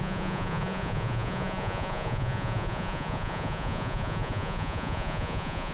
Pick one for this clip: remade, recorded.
remade